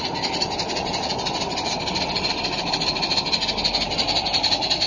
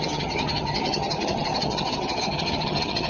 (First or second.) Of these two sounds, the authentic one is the first